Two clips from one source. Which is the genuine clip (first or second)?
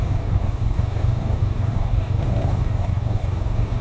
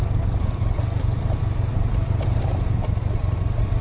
second